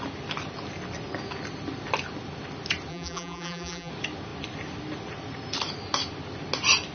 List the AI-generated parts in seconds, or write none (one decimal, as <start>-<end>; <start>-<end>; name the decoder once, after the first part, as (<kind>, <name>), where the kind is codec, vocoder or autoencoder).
2.9-3.9 (vocoder, BigVGAN v2)